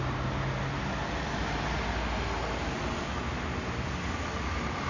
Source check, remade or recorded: recorded